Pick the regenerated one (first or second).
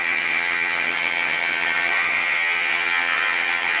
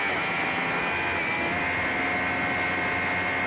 first